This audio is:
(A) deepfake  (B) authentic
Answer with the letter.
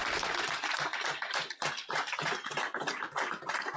B